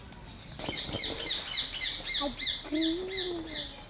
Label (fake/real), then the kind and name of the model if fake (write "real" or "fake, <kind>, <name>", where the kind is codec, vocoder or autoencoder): real